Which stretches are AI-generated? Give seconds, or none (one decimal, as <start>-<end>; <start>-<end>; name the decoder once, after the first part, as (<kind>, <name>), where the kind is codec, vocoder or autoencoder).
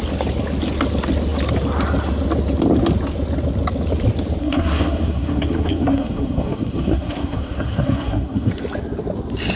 4.4-8.5 (codec, SNAC)